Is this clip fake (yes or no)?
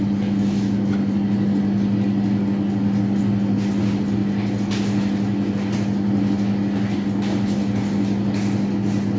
no